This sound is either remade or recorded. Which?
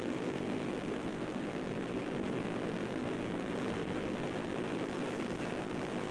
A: remade